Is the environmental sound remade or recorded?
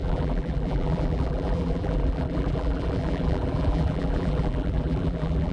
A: remade